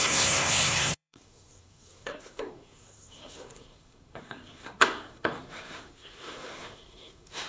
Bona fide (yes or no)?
no